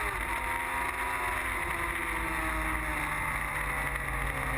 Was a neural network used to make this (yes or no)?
no